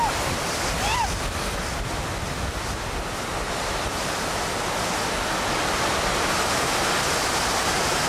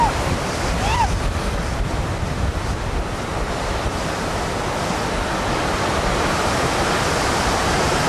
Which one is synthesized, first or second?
second